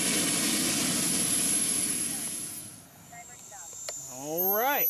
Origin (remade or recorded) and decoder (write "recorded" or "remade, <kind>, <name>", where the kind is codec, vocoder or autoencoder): recorded